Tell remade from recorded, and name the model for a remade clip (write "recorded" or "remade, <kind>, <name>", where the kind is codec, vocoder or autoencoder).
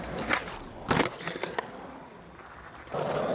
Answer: recorded